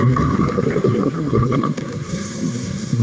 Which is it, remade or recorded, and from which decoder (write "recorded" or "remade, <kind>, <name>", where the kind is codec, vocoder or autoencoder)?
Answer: remade, codec, SNAC